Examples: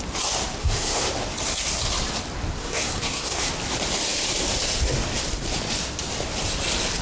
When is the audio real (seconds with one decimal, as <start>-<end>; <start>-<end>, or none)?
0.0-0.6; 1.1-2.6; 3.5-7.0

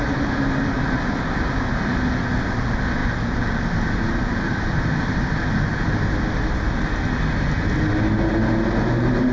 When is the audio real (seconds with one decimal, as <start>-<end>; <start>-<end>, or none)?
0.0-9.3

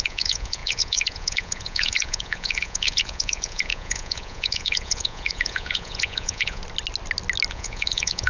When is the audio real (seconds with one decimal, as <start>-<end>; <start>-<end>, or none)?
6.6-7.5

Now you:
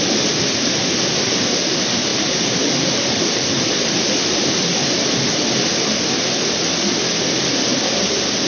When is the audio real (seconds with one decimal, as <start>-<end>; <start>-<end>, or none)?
0.0-2.1; 4.6-8.5

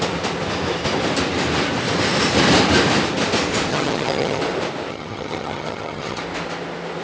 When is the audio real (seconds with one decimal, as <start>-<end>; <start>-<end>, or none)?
0.0-3.7; 4.4-4.9; 6.2-7.0

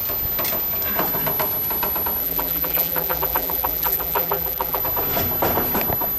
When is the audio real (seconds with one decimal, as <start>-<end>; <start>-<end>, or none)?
0.0-2.2; 4.8-6.2